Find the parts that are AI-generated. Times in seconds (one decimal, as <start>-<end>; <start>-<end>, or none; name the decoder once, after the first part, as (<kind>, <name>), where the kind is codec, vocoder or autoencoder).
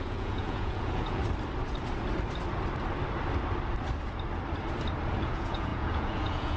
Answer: 0.0-1.2 (vocoder, Vocos); 5.2-6.6